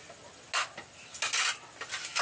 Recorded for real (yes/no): yes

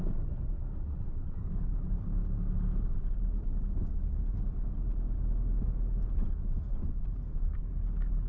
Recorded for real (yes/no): yes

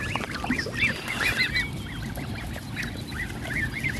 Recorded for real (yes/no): yes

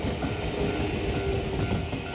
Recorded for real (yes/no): yes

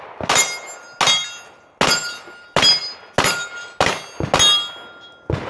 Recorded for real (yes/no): yes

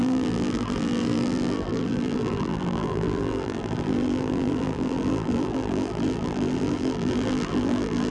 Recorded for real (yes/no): no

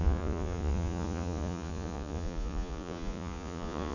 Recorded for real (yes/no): no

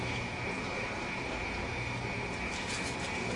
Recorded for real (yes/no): yes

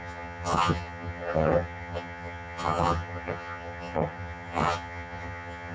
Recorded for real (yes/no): no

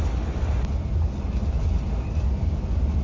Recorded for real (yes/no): yes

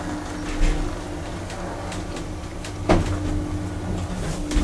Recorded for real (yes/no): yes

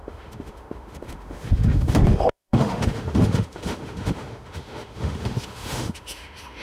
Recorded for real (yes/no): no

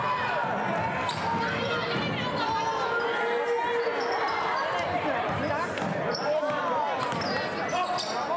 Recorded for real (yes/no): yes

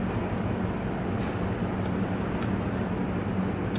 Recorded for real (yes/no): yes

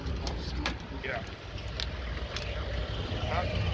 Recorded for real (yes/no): yes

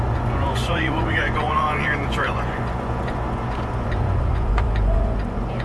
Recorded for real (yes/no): no